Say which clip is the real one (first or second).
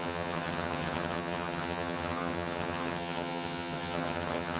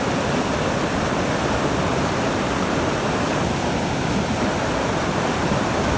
second